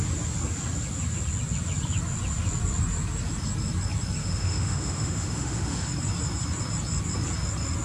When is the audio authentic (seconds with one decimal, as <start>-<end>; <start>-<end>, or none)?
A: 0.0-4.2; 5.9-7.8